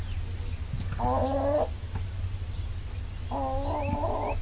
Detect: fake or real real